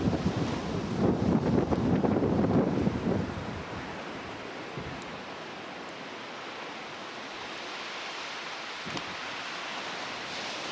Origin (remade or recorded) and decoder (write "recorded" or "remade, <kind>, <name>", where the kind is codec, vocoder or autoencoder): recorded